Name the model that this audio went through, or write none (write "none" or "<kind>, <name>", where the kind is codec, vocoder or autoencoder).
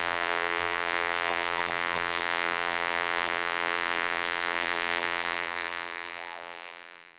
vocoder, BigVGAN v2